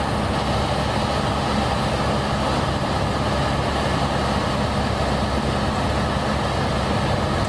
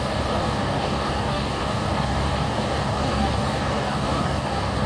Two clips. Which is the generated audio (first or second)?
second